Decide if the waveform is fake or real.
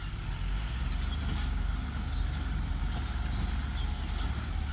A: real